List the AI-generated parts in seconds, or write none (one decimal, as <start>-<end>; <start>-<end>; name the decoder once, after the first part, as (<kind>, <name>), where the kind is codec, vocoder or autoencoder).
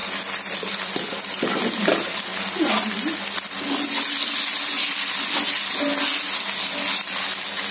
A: none